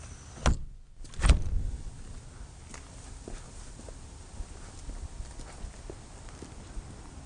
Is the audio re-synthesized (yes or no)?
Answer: no